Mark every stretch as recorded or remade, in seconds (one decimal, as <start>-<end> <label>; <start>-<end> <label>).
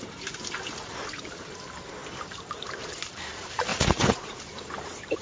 0.0-3.7 recorded; 3.7-4.4 remade; 4.4-5.2 recorded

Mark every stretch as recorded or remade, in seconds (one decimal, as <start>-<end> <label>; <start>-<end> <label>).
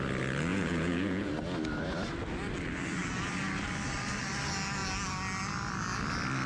0.0-0.5 recorded; 0.5-1.3 remade; 1.3-6.5 recorded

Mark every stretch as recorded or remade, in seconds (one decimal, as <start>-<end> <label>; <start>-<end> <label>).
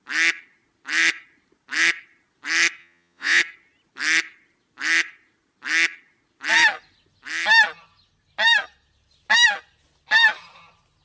0.0-2.8 recorded; 2.8-3.4 remade; 3.4-11.0 recorded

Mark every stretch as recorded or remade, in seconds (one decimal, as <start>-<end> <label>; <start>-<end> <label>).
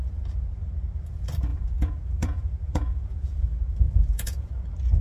0.0-1.5 recorded; 1.5-4.5 remade; 4.5-5.0 recorded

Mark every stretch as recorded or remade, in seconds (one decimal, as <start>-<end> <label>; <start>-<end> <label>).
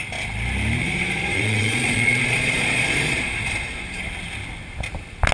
0.0-0.8 recorded; 0.8-4.0 remade; 4.0-5.3 recorded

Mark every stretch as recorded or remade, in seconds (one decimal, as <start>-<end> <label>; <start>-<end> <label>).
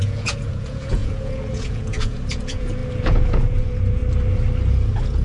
0.0-4.0 remade; 4.0-4.7 recorded; 4.7-5.2 remade